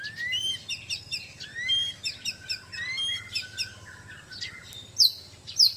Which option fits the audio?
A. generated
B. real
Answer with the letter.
B